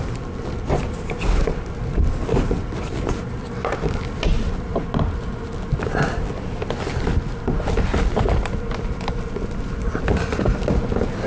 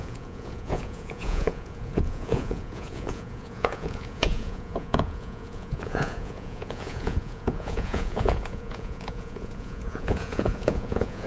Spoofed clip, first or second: second